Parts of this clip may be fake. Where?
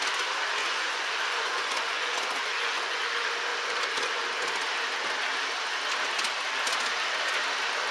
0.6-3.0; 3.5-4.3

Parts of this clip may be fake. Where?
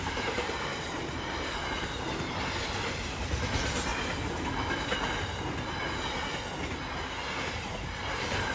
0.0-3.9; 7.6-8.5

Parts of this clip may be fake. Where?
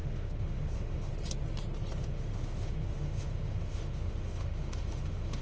0.0-1.1; 2.0-5.4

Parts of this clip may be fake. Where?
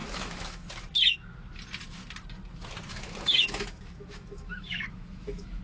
0.0-0.7; 2.9-5.6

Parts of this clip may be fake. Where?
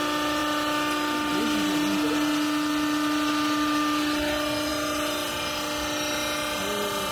none